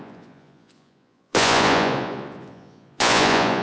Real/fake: fake